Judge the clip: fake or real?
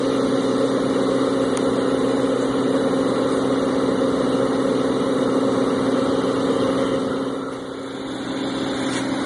real